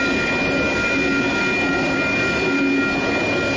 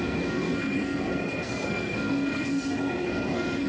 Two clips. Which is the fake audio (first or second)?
second